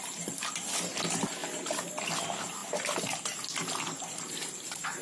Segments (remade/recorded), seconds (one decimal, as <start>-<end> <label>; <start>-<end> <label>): 0.0-5.0 recorded